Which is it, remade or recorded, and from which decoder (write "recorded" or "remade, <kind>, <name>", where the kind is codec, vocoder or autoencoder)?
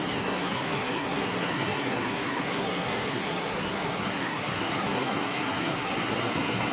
remade, codec, SNAC